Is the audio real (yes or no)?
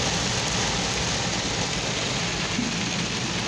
yes